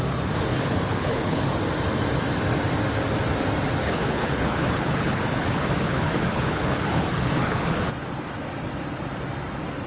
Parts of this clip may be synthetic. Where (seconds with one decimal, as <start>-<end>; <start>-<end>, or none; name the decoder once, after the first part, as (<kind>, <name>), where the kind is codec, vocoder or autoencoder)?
0.5-1.4 (codec, HILCodec); 3.8-7.9